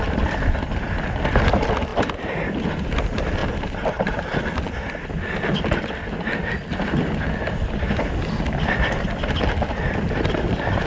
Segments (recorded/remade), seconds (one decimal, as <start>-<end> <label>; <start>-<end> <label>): 0.0-1.9 recorded; 1.9-2.5 remade; 2.5-3.4 recorded; 3.4-4.4 remade; 4.4-10.9 recorded